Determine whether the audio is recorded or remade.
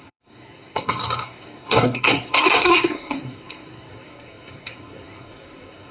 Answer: remade